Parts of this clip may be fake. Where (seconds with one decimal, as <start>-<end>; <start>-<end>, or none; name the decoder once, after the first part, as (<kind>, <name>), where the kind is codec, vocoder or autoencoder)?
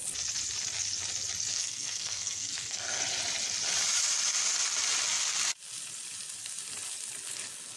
1.5-3.0 (codec, SNAC)